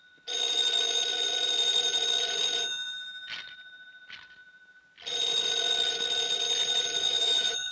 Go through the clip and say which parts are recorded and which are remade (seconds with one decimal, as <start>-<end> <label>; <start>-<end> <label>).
0.0-7.0 recorded; 7.0-7.7 remade